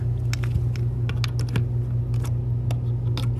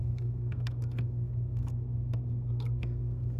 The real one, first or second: first